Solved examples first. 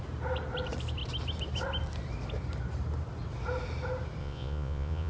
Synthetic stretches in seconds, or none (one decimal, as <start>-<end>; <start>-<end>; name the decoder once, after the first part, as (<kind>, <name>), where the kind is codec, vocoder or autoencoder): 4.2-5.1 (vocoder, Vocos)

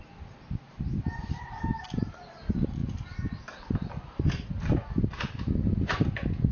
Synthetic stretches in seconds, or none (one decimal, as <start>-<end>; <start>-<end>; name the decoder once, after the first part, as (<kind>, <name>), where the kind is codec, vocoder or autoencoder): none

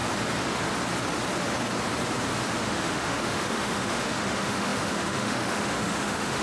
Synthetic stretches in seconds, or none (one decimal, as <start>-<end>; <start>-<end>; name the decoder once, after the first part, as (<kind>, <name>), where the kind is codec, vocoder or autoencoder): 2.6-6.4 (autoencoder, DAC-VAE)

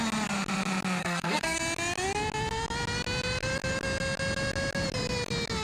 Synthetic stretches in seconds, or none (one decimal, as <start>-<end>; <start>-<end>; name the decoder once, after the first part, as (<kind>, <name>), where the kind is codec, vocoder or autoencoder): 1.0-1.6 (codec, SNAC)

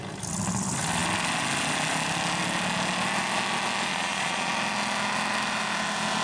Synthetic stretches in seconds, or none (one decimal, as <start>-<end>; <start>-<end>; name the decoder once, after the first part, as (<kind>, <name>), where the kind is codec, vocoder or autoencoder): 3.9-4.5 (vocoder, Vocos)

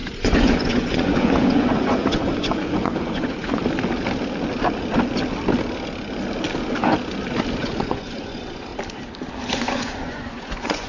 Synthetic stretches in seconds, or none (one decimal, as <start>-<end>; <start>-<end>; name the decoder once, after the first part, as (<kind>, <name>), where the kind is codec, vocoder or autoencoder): 0.0-3.6 (vocoder, Vocos); 7.6-8.7; 9.5-10.9